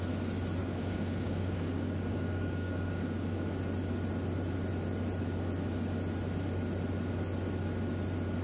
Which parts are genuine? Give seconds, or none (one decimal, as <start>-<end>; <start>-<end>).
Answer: 0.0-0.6; 3.6-8.4